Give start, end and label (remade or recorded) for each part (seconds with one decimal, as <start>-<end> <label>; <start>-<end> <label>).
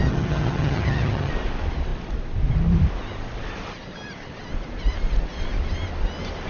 0.0-1.3 remade; 1.3-6.5 recorded